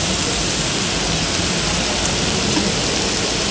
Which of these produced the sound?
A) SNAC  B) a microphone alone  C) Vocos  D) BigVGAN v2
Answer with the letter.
B